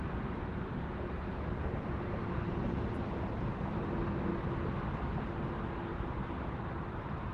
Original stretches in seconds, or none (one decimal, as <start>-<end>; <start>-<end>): 0.0-0.4; 2.4-5.9